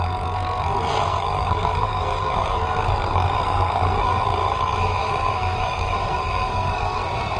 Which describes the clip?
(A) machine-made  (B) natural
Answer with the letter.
A